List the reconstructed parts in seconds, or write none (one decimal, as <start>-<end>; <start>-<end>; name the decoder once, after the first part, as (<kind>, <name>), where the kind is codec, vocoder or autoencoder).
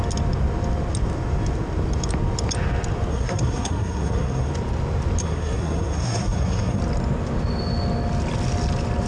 3.1-4.5 (codec, SNAC); 5.2-6.8